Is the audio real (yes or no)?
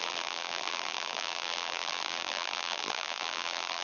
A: no